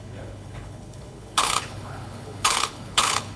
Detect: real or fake fake